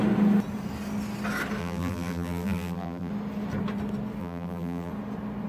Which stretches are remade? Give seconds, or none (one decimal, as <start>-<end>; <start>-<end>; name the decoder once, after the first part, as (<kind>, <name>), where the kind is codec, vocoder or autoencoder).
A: 1.6-3.1 (vocoder, BigVGAN v2); 4.2-4.9